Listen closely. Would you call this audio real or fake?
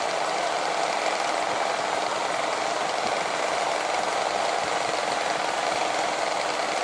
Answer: real